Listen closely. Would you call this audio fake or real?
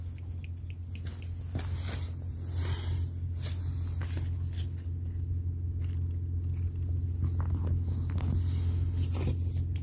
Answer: real